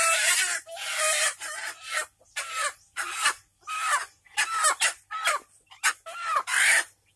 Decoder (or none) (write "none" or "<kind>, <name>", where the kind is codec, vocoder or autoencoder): none